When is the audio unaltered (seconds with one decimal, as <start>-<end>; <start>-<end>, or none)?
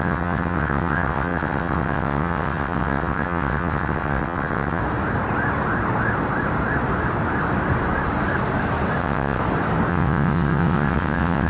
4.8-9.0; 9.4-9.9